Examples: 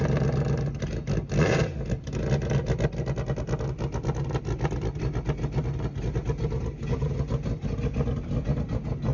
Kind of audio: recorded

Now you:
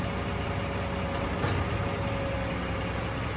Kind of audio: recorded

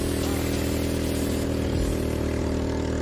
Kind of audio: recorded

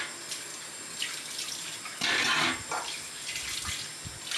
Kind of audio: recorded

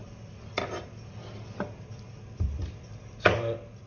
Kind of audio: recorded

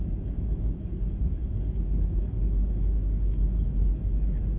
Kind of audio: remade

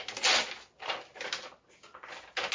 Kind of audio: recorded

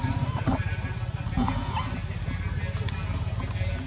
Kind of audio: recorded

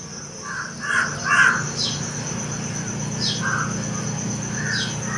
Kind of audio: recorded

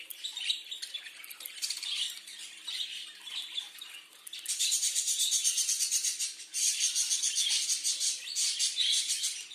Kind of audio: remade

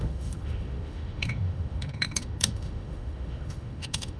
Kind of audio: remade